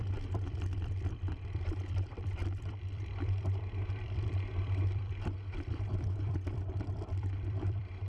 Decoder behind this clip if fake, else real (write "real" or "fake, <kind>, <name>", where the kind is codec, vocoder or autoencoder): fake, vocoder, BigVGAN v2